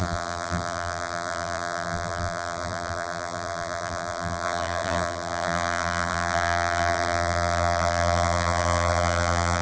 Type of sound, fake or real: fake